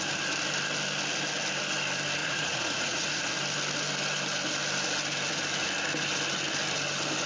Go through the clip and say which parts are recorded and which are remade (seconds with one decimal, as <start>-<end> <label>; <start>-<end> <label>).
0.0-2.2 recorded; 2.2-3.3 remade; 3.3-7.3 recorded